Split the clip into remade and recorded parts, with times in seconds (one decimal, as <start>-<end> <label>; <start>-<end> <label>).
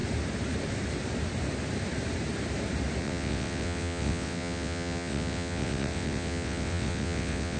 0.0-3.0 recorded; 3.0-7.6 remade